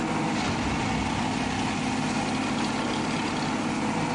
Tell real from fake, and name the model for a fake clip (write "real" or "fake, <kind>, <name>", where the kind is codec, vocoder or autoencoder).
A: real